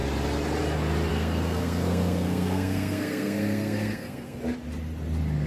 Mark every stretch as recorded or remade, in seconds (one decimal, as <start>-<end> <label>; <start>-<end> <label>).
0.0-1.1 recorded; 1.1-4.4 remade; 4.4-5.5 recorded